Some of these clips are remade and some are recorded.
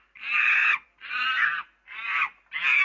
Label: recorded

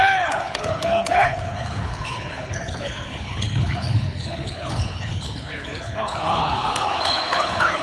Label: remade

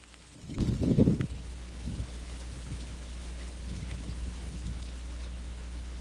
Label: remade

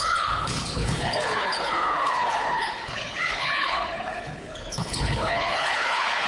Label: remade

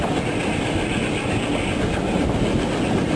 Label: recorded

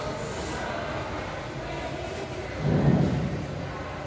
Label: recorded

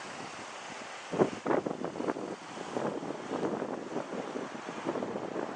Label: recorded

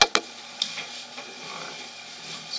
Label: recorded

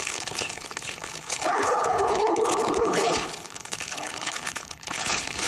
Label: remade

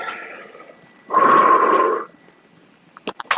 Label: recorded